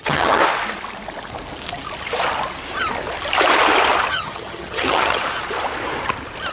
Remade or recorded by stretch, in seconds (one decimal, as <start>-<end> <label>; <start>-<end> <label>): 0.0-0.4 remade; 0.4-4.1 recorded; 4.1-5.2 remade; 5.2-6.5 recorded